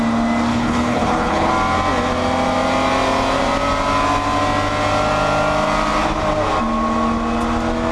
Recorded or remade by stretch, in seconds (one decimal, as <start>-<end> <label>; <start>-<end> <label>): 0.0-0.5 recorded; 0.5-1.5 remade; 1.5-7.9 recorded